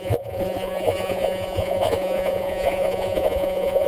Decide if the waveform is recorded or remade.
remade